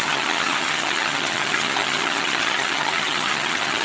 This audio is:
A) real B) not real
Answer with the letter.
B